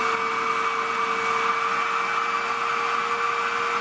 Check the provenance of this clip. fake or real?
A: real